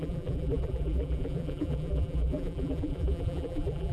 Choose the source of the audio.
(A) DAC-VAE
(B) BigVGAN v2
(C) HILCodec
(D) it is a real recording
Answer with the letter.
B